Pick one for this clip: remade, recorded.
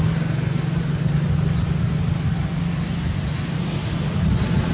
recorded